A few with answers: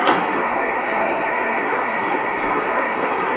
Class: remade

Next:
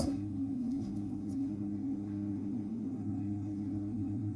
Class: remade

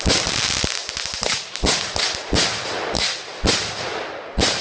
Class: recorded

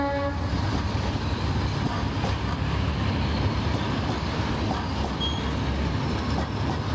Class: recorded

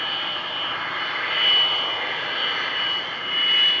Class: recorded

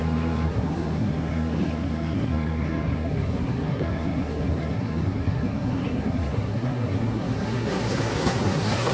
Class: remade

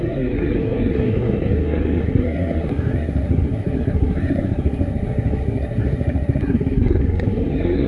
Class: remade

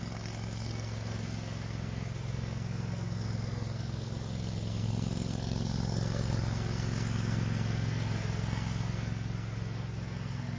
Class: remade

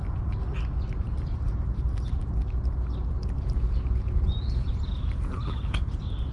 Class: recorded